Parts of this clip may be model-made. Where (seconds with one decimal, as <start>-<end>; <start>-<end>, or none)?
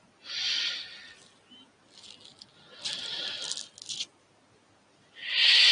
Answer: none